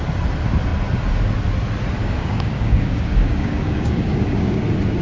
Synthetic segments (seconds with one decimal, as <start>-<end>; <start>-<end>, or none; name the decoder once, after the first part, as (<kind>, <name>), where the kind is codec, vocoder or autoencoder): 2.0-4.6 (codec, DAC)